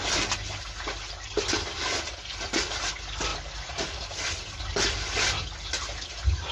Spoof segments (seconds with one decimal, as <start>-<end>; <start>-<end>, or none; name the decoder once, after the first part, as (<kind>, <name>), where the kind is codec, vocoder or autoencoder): none

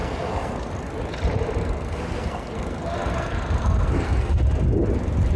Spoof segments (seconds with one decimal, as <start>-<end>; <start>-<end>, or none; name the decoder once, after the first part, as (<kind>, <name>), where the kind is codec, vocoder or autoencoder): 0.0-0.7 (codec, SNAC); 1.6-4.4

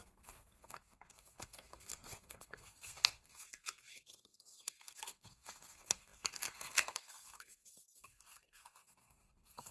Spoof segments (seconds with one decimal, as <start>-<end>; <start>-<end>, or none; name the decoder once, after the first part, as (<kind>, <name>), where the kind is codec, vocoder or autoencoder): 0.0-9.7 (codec, SNAC)

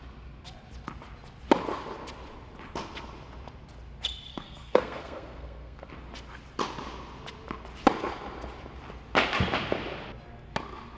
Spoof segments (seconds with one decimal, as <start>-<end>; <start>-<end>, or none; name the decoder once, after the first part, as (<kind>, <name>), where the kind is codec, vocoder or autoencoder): 4.3-5.9 (codec, SNAC)